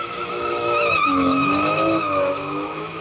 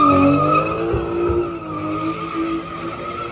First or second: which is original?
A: second